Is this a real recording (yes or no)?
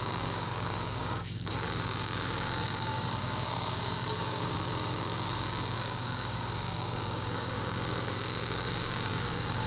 no